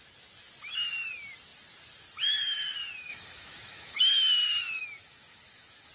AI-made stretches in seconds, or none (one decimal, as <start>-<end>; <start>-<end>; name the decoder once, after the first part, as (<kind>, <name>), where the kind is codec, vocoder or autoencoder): 3.1-4.0 (autoencoder, DAC-VAE); 4.8-5.9